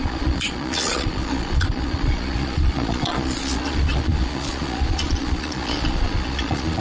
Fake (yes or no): yes